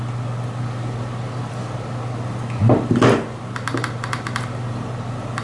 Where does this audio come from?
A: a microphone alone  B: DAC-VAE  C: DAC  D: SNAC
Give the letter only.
A